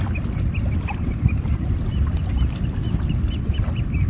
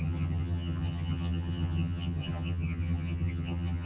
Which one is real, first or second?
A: first